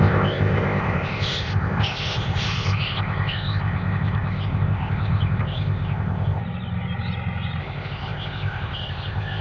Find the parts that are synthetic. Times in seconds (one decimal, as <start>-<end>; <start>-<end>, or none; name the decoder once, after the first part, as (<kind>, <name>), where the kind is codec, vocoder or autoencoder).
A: 0.0-6.4 (codec, ZipCodec); 7.6-9.4